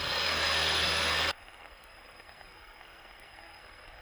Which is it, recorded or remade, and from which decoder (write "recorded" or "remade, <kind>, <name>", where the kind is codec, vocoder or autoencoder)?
remade, codec, SNAC